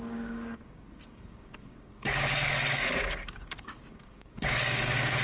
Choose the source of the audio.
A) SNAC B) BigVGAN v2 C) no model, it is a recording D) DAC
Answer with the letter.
D